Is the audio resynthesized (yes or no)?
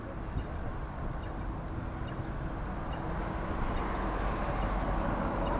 no